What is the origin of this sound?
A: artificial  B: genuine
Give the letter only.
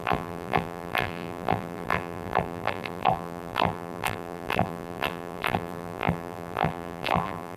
A